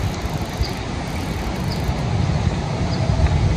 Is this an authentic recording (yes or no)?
yes